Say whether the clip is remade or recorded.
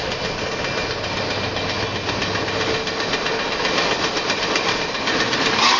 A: recorded